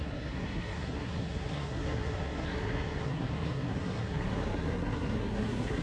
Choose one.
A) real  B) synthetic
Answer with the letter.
B